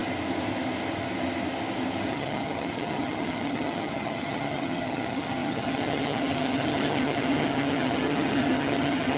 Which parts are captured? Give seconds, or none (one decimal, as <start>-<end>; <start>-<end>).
0.0-2.1